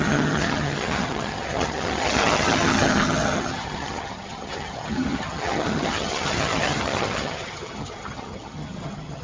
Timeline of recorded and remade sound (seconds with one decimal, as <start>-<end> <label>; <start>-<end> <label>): 0.0-9.2 remade